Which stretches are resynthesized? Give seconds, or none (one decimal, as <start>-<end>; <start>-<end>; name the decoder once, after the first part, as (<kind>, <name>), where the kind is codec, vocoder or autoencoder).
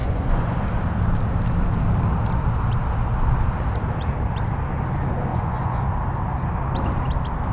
0.0-0.6 (vocoder, Vocos); 5.3-5.8